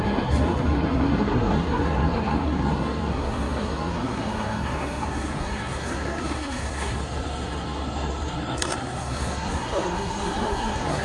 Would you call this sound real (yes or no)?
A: no